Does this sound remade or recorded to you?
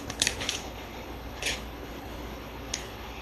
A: remade